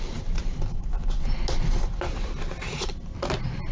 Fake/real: real